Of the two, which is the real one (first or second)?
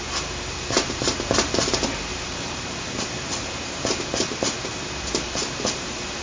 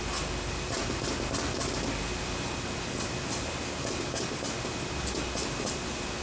second